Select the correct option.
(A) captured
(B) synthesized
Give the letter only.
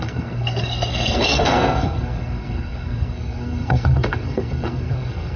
B